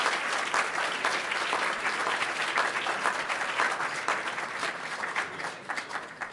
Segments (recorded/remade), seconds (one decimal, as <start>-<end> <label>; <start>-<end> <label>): 0.0-6.3 remade